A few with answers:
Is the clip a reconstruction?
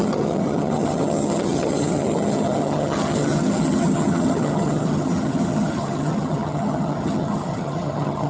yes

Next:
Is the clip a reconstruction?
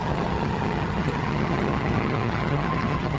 yes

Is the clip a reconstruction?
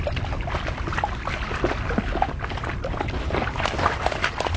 no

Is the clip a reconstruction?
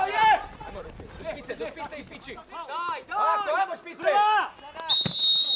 no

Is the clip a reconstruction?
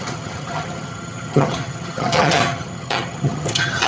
yes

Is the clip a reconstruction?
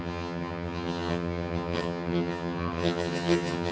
yes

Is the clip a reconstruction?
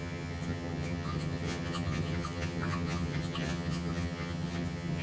yes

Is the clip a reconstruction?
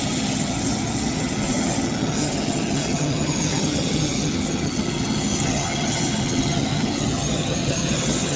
yes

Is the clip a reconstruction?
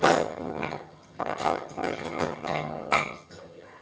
yes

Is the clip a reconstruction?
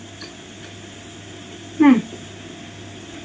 no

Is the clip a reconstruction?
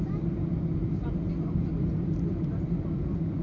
no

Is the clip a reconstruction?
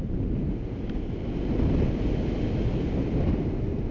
no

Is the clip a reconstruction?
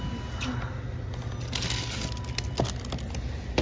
no